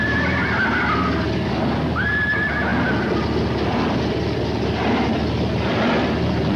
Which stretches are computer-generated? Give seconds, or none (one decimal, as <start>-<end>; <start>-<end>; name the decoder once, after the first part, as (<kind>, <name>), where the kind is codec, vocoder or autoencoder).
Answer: none